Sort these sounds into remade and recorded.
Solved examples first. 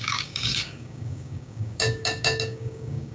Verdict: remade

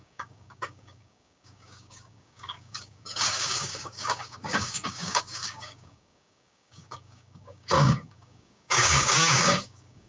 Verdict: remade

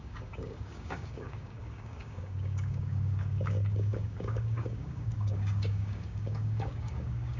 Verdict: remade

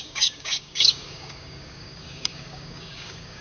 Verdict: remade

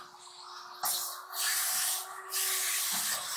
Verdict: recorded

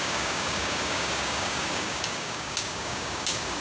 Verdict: remade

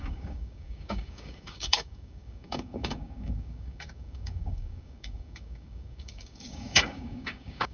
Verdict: remade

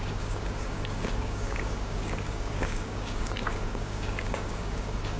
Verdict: remade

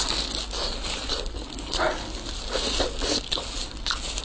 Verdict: recorded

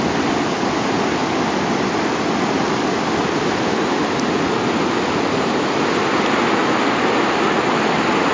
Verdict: recorded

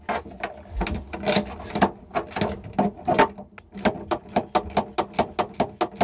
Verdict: recorded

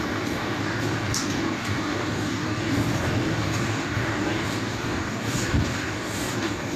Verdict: remade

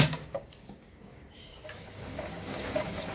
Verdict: remade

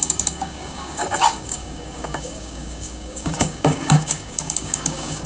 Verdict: remade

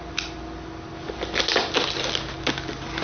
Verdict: recorded